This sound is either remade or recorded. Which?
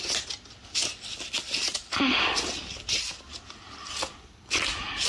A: recorded